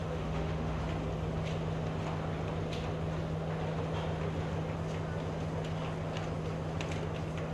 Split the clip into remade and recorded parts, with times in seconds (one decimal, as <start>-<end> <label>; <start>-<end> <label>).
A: 0.0-0.8 remade; 0.8-7.5 recorded